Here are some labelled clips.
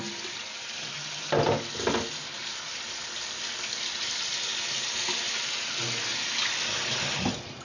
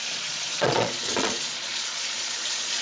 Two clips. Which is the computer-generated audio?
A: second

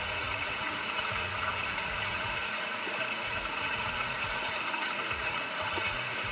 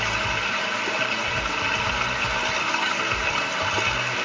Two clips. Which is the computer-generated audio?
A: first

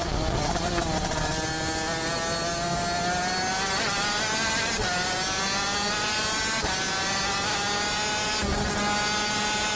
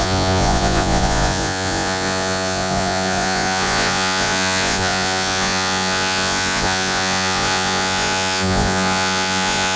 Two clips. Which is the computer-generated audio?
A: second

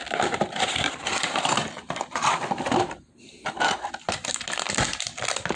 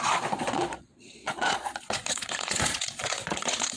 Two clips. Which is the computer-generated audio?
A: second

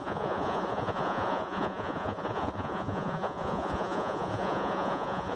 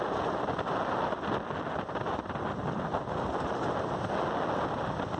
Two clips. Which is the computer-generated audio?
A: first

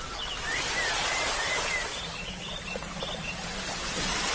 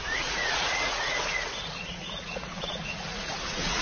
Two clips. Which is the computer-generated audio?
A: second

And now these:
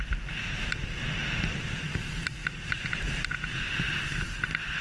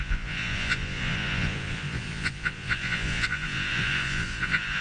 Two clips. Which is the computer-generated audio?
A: second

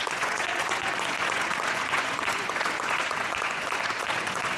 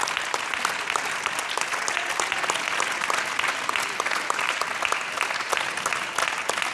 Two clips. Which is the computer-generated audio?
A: first